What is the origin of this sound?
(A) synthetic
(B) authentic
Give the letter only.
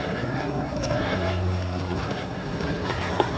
A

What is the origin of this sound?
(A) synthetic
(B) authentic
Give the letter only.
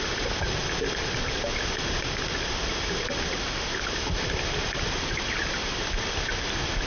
B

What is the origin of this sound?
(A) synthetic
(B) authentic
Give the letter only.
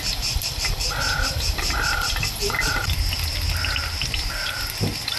B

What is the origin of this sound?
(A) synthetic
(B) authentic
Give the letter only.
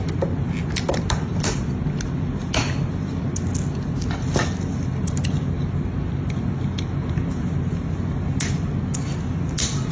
B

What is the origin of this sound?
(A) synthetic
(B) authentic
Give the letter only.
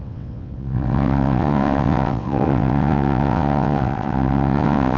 A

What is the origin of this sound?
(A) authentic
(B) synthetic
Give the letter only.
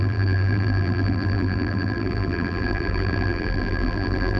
B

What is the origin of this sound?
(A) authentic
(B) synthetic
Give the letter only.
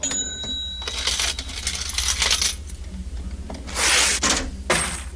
A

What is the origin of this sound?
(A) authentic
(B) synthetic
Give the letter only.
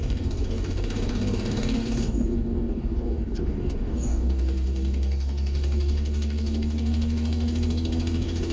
B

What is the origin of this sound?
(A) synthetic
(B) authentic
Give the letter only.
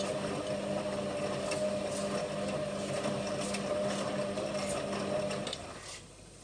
B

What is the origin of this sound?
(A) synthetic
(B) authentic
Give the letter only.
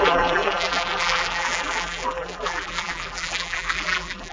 A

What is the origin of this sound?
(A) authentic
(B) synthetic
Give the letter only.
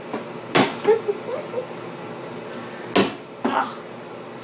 A